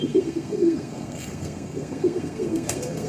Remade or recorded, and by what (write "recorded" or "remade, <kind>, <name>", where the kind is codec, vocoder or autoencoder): remade, codec, SNAC